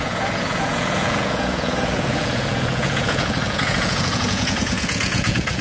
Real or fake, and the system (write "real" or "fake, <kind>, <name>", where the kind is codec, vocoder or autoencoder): fake, vocoder, Vocos